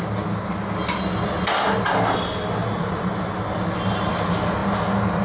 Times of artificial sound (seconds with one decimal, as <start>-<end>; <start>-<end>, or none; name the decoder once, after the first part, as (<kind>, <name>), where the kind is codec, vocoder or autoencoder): 2.6-3.1 (vocoder, Vocos)